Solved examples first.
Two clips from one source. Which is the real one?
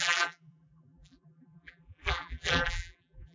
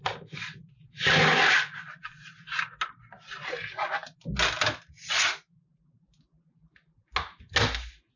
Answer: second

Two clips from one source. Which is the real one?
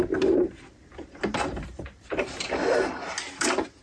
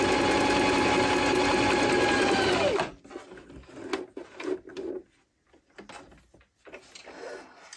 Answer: second